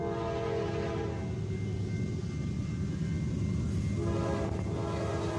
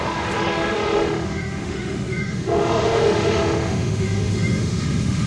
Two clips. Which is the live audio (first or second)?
first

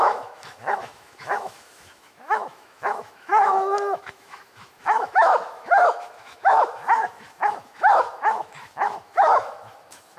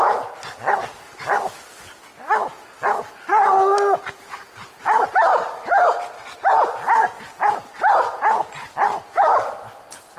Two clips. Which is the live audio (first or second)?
second